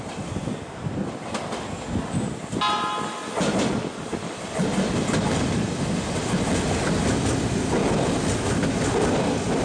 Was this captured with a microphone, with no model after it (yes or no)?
yes